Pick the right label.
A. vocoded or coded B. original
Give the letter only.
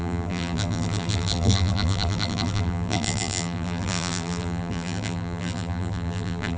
A